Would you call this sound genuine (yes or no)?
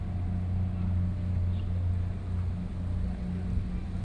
yes